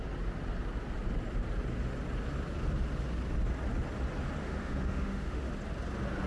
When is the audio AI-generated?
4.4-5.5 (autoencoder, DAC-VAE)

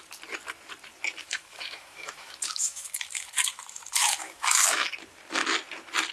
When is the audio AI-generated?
1.2-4.9 (autoencoder, DAC-VAE)

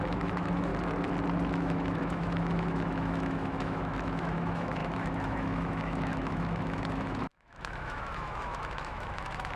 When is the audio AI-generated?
0.0-0.7 (autoencoder, DAC-VAE); 1.5-9.6